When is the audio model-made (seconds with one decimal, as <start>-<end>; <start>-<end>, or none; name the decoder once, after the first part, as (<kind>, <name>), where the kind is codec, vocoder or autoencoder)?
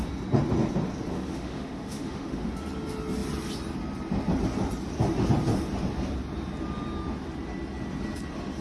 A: 1.1-2.5 (autoencoder, DAC-VAE)